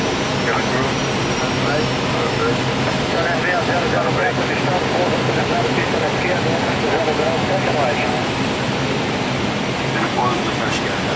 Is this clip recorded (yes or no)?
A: yes